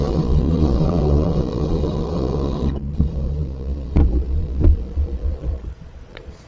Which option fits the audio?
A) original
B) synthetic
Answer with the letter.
B